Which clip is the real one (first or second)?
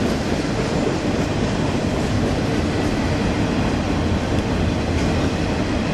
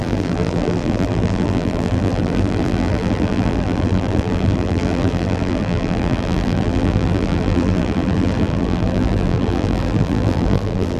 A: first